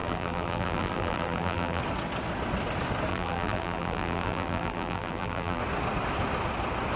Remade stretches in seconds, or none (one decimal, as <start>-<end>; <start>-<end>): 0.0-1.8; 3.1-5.6